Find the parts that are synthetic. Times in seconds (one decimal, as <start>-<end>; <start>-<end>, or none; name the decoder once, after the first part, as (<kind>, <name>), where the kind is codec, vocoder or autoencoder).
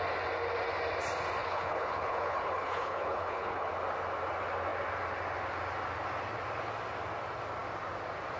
1.4-3.7 (codec, HILCodec)